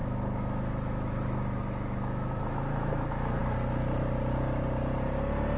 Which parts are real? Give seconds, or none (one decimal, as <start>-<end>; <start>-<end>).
3.4-5.6